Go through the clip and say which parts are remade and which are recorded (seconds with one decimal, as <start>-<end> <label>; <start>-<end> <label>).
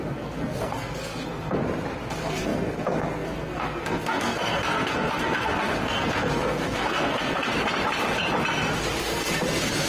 0.0-1.6 remade; 1.6-2.1 recorded; 2.1-7.5 remade; 7.5-9.0 recorded; 9.0-9.9 remade